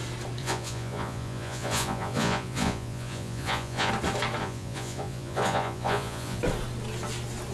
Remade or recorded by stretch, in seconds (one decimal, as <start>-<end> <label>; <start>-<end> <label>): 0.0-0.4 recorded; 0.4-3.9 remade; 3.9-4.4 recorded; 4.4-6.4 remade; 6.4-7.5 recorded